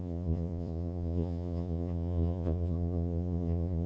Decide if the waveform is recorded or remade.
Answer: remade